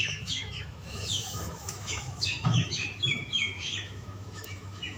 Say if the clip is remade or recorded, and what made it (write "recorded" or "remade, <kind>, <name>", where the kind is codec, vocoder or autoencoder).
remade, autoencoder, DAC-VAE